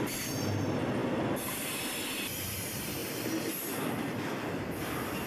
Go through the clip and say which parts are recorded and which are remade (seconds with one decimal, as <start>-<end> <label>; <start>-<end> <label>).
0.0-3.0 recorded; 3.0-4.6 remade; 4.6-5.3 recorded